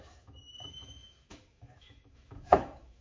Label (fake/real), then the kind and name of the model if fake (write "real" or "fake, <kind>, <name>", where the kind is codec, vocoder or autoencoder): fake, autoencoder, DAC-VAE